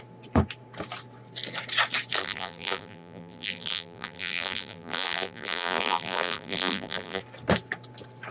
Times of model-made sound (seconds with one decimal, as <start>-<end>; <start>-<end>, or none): 2.2-7.2